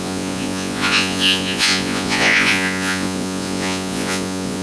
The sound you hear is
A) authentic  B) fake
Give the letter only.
B